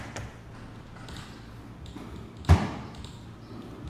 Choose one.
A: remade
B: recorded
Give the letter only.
B